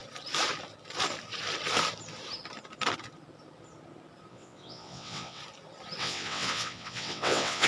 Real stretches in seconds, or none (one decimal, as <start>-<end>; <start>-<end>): 0.0-4.3; 5.4-6.0